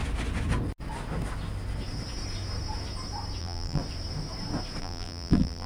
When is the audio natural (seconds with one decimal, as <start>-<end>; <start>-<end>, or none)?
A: 0.0-3.4; 3.8-4.8

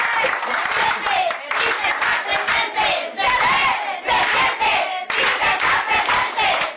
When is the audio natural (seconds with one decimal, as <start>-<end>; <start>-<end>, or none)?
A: 0.0-0.6; 4.0-6.8

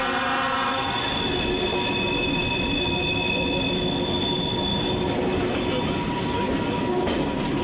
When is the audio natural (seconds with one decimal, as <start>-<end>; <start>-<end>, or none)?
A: 0.0-7.6

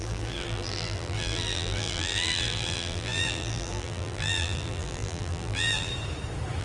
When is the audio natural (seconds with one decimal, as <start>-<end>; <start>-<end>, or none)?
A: 5.9-6.6

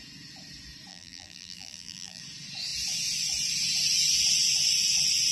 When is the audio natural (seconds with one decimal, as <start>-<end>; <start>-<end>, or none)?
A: 0.0-0.9; 2.2-5.3